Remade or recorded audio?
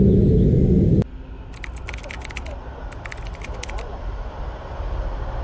recorded